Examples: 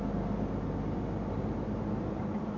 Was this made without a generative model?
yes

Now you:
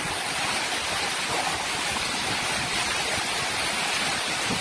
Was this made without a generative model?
yes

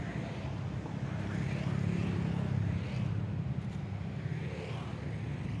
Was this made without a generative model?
yes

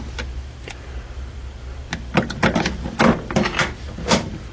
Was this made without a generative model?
yes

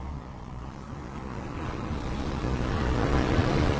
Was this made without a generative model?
no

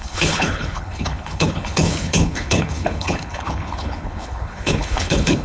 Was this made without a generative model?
no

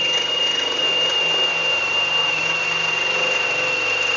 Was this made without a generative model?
yes